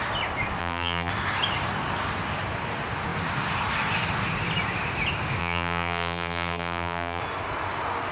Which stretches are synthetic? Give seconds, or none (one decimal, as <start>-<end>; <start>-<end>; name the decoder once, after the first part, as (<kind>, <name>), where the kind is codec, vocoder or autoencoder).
0.6-1.1 (vocoder, BigVGAN v2); 5.4-7.2